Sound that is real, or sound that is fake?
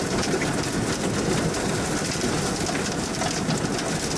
real